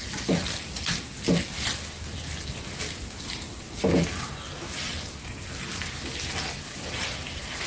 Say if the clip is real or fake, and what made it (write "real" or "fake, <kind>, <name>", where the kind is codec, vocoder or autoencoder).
real